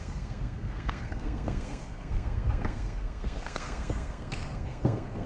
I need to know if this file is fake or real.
fake